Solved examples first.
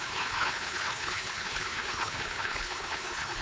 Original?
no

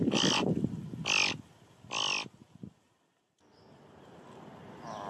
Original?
yes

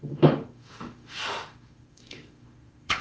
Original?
no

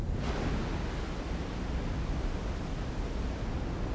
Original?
yes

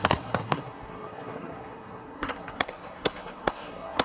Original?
no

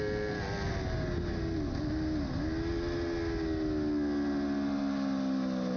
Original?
yes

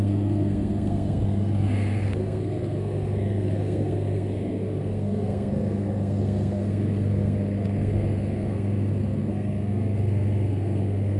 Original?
no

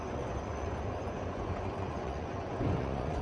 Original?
no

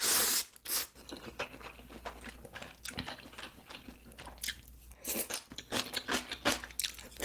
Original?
yes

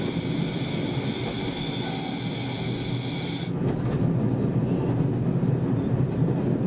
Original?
yes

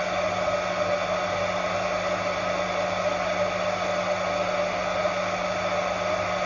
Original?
yes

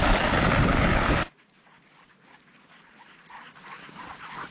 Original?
yes